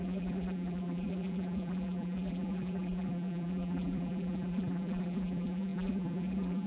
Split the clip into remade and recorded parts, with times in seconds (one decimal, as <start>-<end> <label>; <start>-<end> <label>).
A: 0.0-6.7 remade